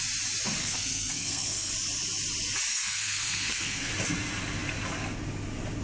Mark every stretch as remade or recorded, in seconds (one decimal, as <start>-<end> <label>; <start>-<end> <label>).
0.0-0.6 recorded; 0.6-1.7 remade; 1.7-2.7 recorded; 2.7-3.9 remade; 3.9-5.8 recorded